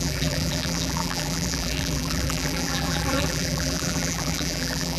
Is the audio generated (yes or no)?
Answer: yes